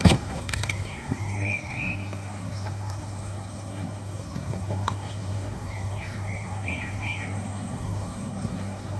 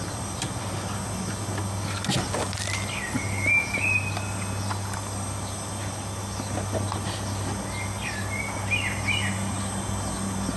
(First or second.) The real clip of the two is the second